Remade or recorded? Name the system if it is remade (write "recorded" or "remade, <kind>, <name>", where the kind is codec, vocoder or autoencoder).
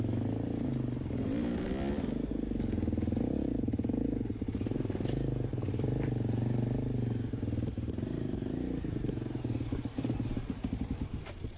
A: recorded